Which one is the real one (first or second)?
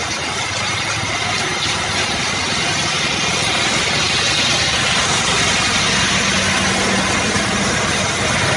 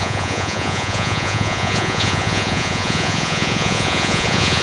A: first